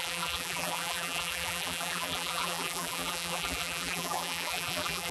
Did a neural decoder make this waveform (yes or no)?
yes